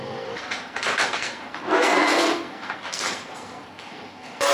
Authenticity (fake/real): fake